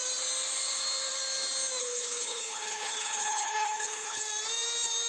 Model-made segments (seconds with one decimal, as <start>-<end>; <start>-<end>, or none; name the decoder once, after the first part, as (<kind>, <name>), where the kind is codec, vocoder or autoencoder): 1.8-4.2 (codec, HILCodec)